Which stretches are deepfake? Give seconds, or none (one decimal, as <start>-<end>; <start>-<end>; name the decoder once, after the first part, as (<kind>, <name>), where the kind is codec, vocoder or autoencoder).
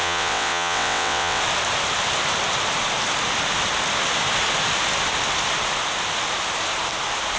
0.0-1.4 (vocoder, WaveNeXt)